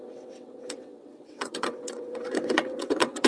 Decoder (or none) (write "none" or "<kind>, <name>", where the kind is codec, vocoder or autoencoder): vocoder, WaveNeXt